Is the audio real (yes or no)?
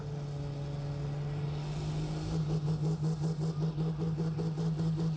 yes